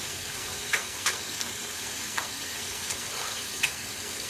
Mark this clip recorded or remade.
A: remade